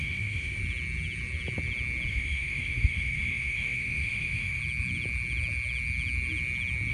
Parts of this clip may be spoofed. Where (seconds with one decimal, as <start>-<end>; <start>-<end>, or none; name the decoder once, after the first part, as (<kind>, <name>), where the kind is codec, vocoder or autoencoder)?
0.0-0.6 (autoencoder, DAC-VAE); 2.1-4.6